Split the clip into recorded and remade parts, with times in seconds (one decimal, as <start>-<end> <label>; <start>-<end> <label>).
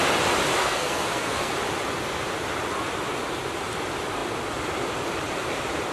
0.0-0.6 recorded; 0.6-1.5 remade; 1.5-5.9 recorded